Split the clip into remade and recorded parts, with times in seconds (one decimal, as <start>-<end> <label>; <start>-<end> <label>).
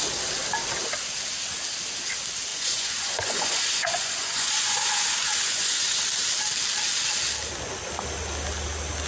0.0-2.5 recorded; 2.5-6.0 remade; 6.0-9.1 recorded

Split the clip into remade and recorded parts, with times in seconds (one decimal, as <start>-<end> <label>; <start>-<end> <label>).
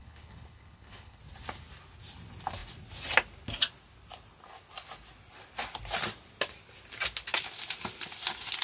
0.0-1.2 remade; 1.2-8.6 recorded